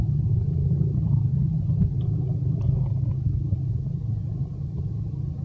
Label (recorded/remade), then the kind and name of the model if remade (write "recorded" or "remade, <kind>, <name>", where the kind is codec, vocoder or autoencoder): recorded